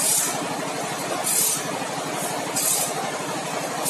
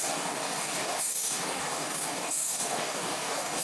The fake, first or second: second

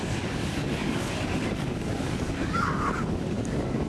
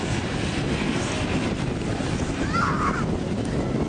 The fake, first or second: first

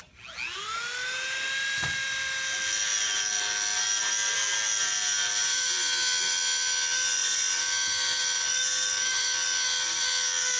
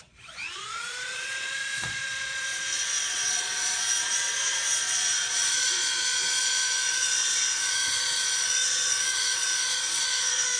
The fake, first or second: second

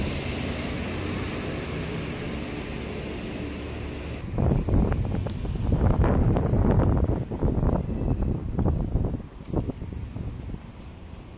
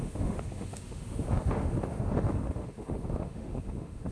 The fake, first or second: second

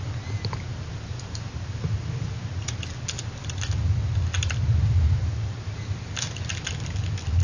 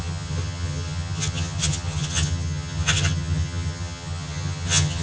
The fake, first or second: second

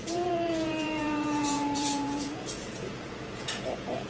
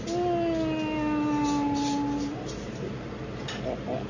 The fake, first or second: first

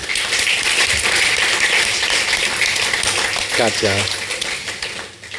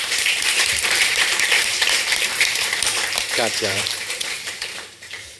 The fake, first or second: second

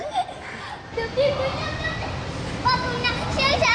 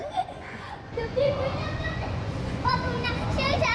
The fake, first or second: second